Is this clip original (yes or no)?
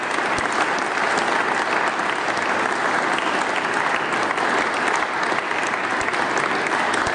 yes